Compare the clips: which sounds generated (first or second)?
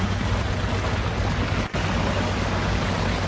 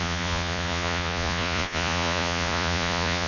second